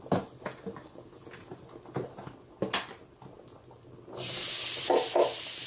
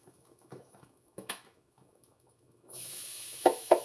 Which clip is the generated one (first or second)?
second